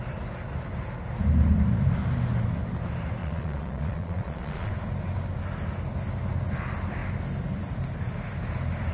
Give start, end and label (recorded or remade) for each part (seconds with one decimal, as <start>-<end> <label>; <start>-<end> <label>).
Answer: 0.0-3.2 recorded; 3.2-4.7 remade; 4.7-8.9 recorded